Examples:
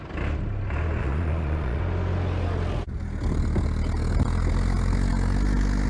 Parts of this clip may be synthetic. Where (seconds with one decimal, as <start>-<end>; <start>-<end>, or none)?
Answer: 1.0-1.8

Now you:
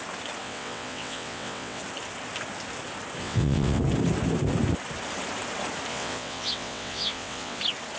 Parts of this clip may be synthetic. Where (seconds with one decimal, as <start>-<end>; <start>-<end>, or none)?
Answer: 0.4-1.8; 3.2-3.8; 5.9-7.6

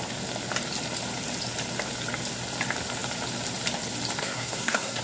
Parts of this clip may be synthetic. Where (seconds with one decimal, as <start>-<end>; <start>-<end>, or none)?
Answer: 4.2-5.0

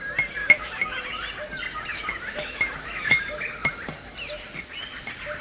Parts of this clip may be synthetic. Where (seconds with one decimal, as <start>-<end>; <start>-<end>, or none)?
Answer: 0.4-1.0; 1.9-3.1

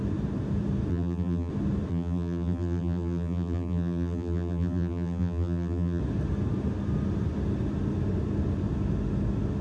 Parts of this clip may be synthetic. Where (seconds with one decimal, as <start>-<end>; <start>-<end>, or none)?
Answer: 0.9-1.5; 1.9-6.0

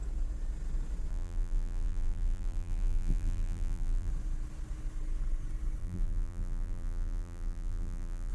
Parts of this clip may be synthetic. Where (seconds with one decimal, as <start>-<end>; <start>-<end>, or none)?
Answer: 1.1-4.1; 5.8-8.3

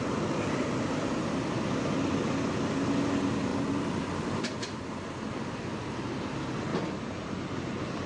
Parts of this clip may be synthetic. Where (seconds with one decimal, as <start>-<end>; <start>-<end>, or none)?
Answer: 3.5-4.8